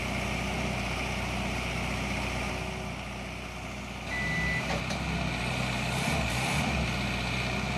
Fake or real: real